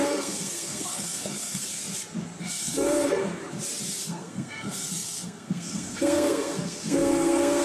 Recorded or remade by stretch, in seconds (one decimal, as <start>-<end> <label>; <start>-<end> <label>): 0.0-1.8 remade; 1.8-2.4 recorded; 2.4-3.4 remade; 3.4-4.0 recorded; 4.0-7.6 remade